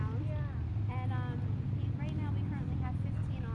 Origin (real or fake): real